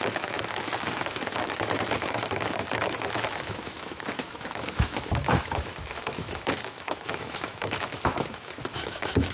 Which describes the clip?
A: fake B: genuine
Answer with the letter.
A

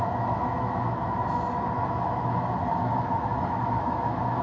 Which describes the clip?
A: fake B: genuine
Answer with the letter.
A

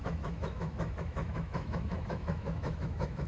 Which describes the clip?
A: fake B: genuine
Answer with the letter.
A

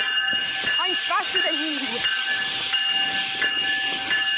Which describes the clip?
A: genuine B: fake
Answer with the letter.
A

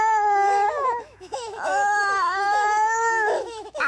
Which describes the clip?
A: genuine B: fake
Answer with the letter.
B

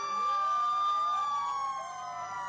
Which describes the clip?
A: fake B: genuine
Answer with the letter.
B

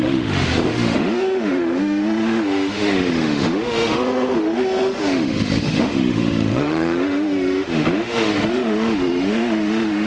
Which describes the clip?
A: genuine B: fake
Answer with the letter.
B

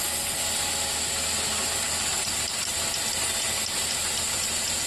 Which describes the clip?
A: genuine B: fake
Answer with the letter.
A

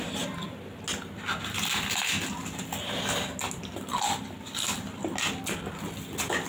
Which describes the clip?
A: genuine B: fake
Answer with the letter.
A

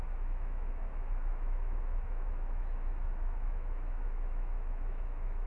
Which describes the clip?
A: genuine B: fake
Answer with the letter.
B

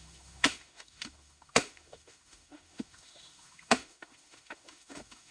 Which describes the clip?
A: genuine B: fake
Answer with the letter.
B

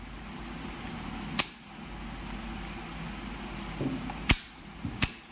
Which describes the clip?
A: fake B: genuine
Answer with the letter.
B